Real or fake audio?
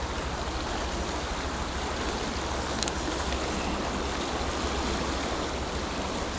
real